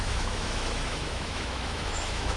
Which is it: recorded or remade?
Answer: remade